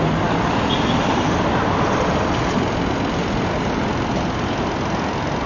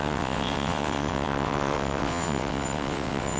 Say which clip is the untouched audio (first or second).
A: first